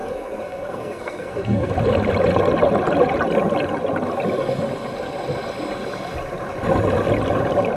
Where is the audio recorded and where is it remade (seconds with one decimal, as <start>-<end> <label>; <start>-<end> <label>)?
0.0-1.7 remade; 1.7-7.8 recorded